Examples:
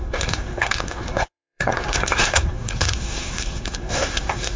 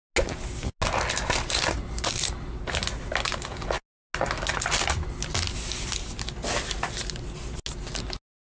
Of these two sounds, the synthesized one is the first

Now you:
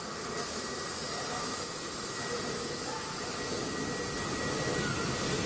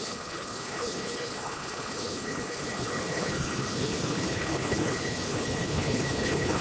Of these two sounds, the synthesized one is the second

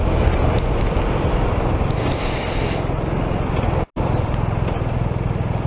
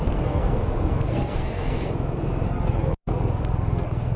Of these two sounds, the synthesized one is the second